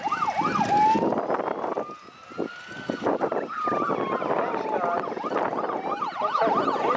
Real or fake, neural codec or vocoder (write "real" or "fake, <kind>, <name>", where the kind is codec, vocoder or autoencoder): real